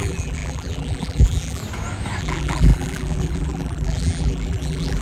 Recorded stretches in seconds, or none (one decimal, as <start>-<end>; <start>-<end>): 1.6-2.2